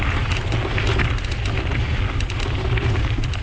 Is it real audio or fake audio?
real